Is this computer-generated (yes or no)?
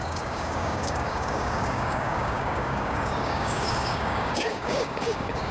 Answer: yes